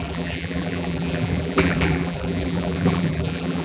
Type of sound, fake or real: fake